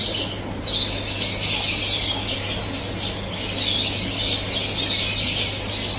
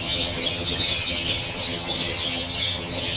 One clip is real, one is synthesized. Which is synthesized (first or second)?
second